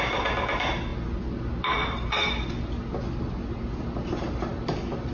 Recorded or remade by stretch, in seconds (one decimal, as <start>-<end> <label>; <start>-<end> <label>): 0.0-5.1 recorded